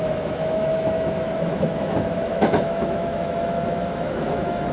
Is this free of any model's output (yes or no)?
no